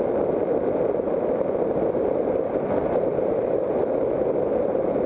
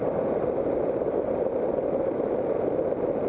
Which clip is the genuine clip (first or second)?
first